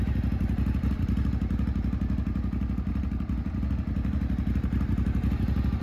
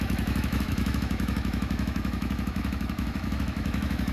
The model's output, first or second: second